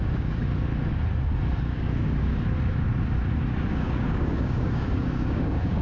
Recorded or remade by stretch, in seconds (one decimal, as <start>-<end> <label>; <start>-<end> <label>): 0.0-0.7 remade; 0.7-1.6 recorded; 1.6-2.3 remade; 2.3-3.7 recorded; 3.7-5.8 remade